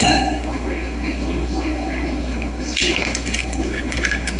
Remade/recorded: remade